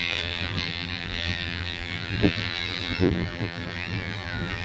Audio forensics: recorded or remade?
remade